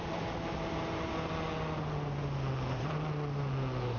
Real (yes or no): yes